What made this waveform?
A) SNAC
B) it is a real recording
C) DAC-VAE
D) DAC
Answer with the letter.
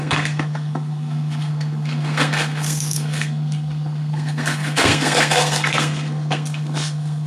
A